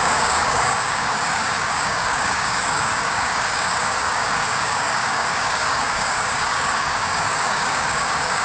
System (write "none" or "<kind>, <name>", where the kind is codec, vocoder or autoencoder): codec, DAC